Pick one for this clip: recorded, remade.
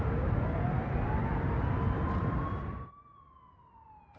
recorded